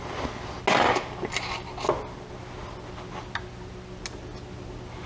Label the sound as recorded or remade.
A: recorded